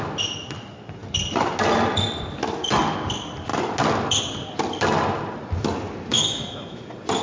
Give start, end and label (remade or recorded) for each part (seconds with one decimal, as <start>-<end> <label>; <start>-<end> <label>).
0.0-6.1 recorded; 6.1-6.8 remade; 6.8-7.2 recorded